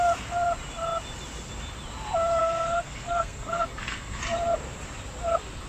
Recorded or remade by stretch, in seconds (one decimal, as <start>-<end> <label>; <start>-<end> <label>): 0.0-2.4 recorded; 2.4-4.2 remade; 4.2-5.7 recorded